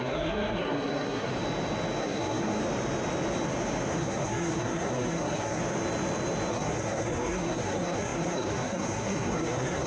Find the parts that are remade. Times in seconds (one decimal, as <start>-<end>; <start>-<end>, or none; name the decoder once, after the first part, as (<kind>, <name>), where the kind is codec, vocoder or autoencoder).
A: 0.0-1.3 (codec, SNAC); 2.0-2.6; 3.9-5.6; 6.5-9.9